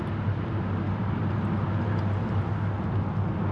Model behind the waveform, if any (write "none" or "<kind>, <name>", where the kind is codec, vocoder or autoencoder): none